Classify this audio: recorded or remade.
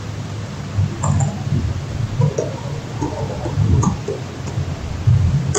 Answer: recorded